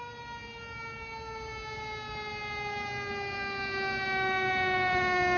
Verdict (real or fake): real